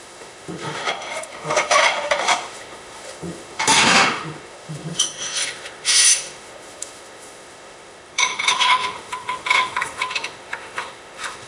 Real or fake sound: fake